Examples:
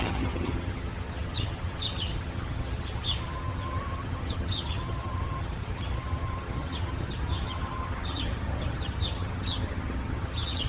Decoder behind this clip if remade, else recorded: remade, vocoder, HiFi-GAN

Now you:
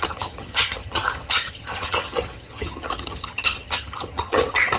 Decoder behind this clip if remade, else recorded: remade, vocoder, HiFi-GAN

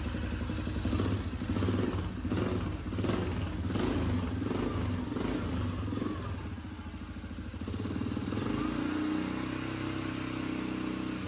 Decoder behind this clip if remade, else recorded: recorded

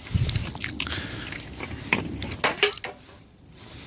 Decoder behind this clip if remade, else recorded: recorded